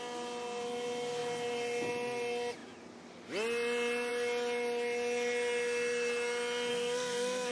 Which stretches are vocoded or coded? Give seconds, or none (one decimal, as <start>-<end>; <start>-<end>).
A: 6.7-7.5